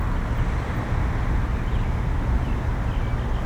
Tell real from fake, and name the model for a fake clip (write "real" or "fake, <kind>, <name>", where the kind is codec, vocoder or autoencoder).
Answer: real